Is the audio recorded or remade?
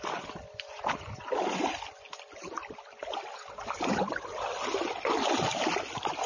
recorded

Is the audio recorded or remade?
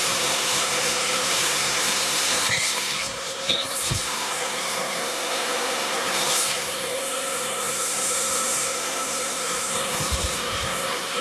remade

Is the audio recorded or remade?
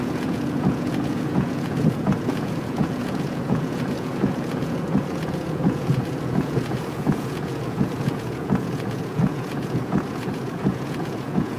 remade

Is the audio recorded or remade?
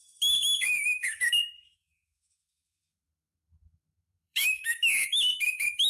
remade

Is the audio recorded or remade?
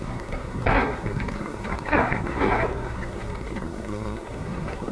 remade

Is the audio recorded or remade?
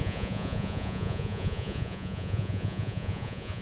remade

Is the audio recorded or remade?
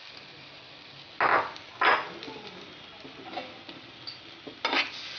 recorded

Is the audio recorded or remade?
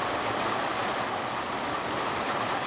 remade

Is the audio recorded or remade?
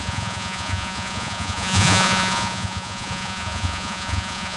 remade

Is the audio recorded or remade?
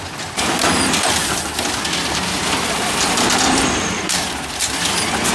remade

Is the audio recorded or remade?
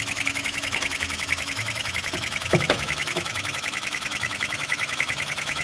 remade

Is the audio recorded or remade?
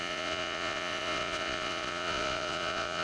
remade